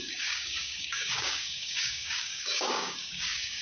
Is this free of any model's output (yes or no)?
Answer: no